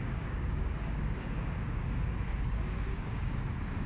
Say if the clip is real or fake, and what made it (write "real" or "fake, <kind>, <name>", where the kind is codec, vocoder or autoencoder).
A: fake, codec, DAC